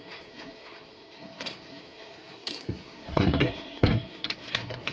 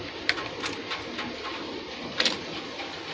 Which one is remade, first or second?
first